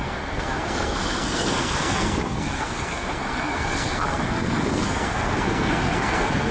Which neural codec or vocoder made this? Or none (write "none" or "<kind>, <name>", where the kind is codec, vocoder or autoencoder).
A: codec, SNAC